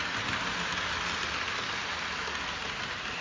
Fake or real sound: real